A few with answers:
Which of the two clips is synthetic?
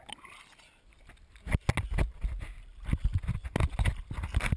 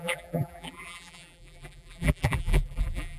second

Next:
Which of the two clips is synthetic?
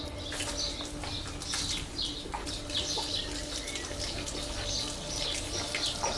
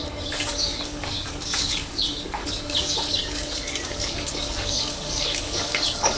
second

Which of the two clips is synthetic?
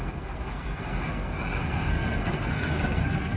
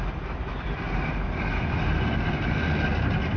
first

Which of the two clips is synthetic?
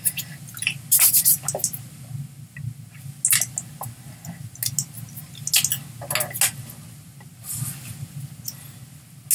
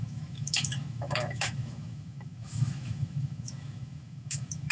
second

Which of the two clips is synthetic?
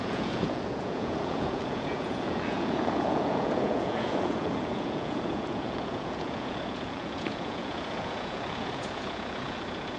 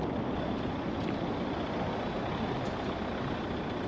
first